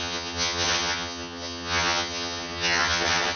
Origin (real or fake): fake